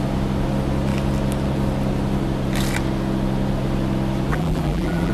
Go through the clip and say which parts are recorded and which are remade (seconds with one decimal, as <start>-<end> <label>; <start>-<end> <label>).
0.0-4.3 recorded; 4.3-5.1 remade